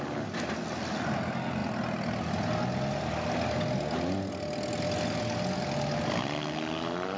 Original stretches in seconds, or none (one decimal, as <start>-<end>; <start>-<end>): 0.0-7.2

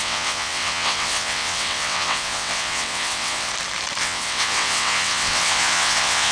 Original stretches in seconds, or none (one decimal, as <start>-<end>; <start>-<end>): 3.5-4.0

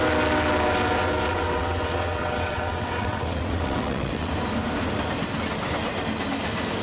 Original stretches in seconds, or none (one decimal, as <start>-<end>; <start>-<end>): 0.0-1.3; 4.3-6.8

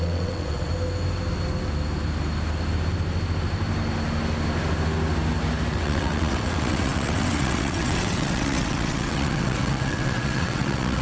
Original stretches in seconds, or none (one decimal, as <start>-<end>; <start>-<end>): 0.7-5.7

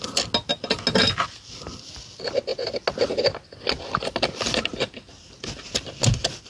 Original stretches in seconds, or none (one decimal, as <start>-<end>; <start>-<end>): 0.0-6.5

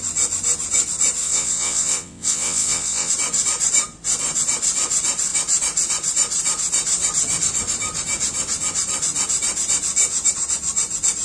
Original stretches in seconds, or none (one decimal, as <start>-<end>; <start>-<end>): 0.0-1.2; 3.1-11.2